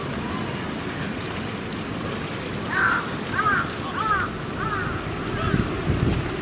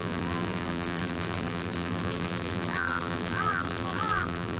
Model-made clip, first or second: second